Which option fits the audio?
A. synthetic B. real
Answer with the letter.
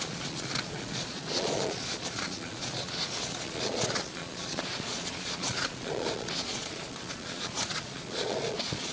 A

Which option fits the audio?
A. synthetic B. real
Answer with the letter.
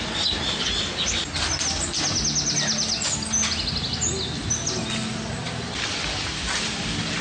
B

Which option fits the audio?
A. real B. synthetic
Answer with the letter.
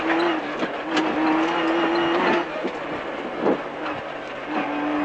A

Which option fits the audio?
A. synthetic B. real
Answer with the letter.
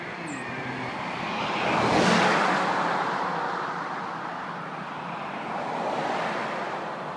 B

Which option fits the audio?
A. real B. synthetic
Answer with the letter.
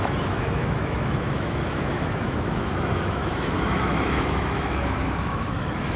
B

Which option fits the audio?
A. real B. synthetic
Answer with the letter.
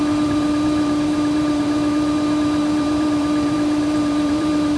B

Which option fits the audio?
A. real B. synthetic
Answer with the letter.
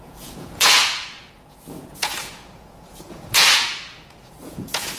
B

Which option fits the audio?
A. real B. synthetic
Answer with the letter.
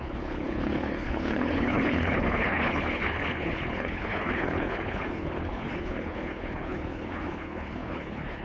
B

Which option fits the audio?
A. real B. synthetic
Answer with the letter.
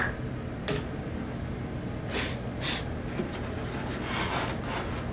A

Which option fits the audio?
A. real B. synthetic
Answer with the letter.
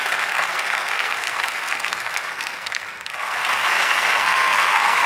B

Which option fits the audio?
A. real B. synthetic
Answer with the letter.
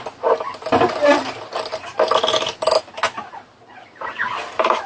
A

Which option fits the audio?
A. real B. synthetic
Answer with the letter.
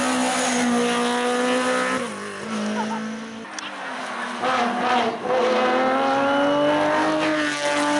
A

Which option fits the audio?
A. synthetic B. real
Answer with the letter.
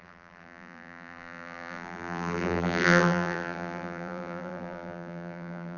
A